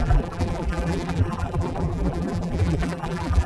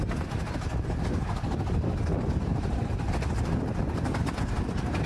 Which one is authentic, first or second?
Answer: second